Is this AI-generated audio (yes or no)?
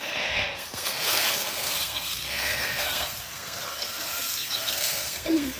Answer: yes